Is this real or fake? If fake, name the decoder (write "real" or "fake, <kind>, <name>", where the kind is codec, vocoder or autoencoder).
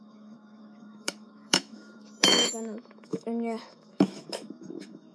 fake, autoencoder, DAC-VAE